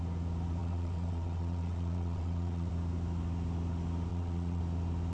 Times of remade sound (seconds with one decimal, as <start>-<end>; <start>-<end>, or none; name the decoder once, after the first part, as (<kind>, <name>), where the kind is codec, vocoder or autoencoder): 0.6-2.7 (vocoder, WaveNeXt); 4.1-4.6